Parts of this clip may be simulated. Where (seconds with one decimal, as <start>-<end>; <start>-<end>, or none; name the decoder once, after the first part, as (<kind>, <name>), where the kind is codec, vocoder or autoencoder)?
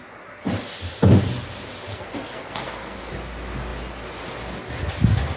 1.9-3.1 (codec, SNAC)